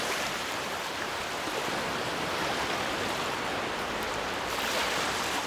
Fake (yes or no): yes